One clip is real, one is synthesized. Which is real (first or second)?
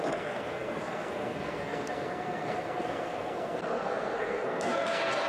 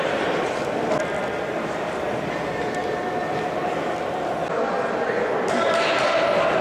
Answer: second